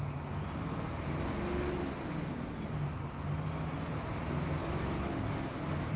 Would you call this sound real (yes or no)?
yes